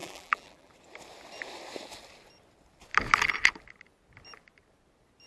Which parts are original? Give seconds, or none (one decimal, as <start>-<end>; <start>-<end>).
0.7-5.3

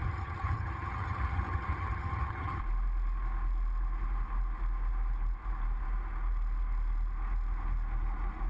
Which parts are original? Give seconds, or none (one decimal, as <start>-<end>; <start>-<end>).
2.6-8.5

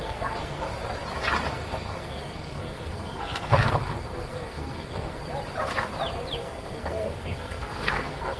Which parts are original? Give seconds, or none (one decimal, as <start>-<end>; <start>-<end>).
0.7-1.5; 5.2-6.4

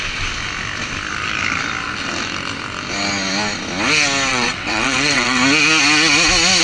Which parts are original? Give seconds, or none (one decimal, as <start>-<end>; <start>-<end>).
0.0-4.3; 5.4-6.6

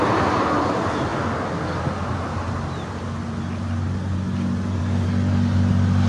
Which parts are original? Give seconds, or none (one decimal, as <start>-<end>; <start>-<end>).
0.0-6.1

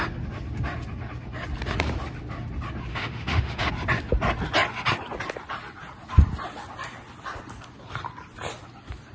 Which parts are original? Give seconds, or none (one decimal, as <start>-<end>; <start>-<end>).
0.0-2.9; 3.7-9.1